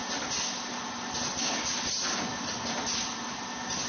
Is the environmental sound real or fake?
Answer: real